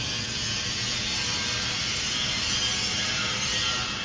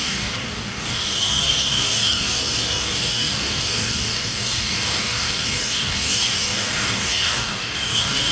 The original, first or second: first